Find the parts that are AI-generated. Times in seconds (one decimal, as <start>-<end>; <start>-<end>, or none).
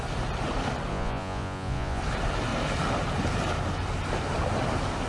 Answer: 0.9-2.0